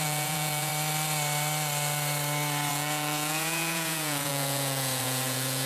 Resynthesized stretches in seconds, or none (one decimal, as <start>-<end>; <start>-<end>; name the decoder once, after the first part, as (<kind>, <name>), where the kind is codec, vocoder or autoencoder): 0.0-0.7 (vocoder, Vocos); 2.7-5.7